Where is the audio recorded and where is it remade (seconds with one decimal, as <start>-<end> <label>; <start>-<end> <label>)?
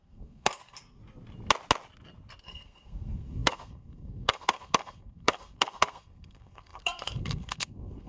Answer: 0.0-1.0 remade; 1.0-2.4 recorded; 2.4-8.1 remade